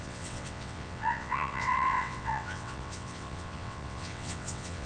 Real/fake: fake